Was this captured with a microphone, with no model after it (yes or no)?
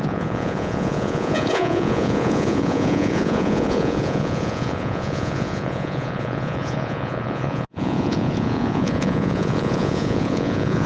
no